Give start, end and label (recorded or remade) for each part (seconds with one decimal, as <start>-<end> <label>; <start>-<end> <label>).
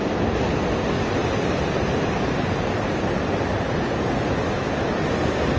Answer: 0.0-1.2 recorded; 1.2-4.6 remade; 4.6-5.6 recorded